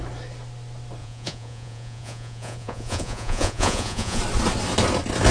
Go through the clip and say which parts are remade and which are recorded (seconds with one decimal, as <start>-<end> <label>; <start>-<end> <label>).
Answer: 0.0-1.0 recorded; 1.0-4.2 remade; 4.2-5.3 recorded

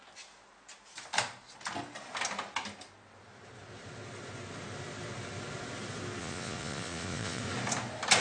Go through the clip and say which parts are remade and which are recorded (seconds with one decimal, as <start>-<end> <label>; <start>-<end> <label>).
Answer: 0.0-6.2 recorded; 6.2-7.4 remade; 7.4-8.2 recorded

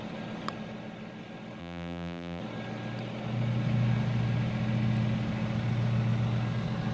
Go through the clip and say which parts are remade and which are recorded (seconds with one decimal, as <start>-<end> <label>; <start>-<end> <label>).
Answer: 0.0-1.6 recorded; 1.6-2.4 remade; 2.4-6.9 recorded

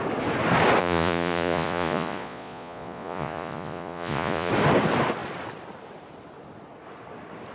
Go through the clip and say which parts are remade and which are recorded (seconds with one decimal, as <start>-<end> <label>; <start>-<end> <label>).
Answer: 0.0-0.8 recorded; 0.8-4.5 remade; 4.5-7.5 recorded

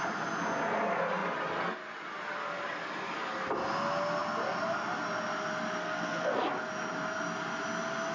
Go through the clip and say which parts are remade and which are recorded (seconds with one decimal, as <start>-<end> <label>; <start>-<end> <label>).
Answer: 0.0-5.8 recorded; 5.8-6.4 remade; 6.4-8.1 recorded

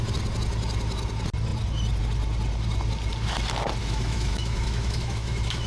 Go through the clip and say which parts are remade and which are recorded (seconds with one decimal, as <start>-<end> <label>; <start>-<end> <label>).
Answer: 0.0-3.8 recorded; 3.8-5.7 remade